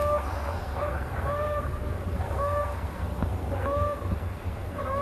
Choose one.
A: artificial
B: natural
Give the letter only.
A